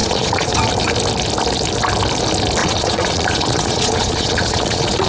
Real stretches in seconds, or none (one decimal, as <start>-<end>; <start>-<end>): 0.6-2.6